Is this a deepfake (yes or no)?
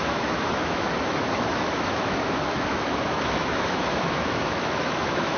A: yes